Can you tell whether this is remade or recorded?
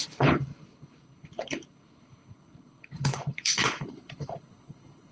remade